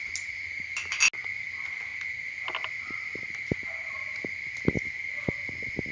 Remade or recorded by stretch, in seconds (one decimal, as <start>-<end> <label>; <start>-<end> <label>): 0.0-5.9 recorded